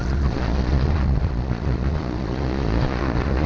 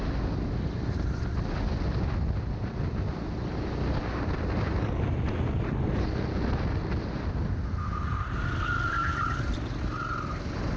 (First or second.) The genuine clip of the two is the second